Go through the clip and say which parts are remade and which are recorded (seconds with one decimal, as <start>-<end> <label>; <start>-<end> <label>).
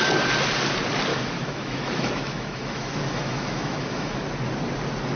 0.0-1.1 recorded; 1.1-4.2 remade; 4.2-5.2 recorded